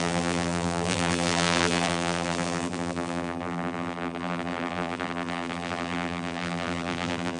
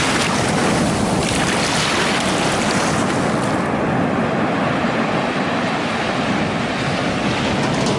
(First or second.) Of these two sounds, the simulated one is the first